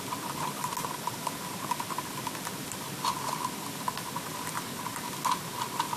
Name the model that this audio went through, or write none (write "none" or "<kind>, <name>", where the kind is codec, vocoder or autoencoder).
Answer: none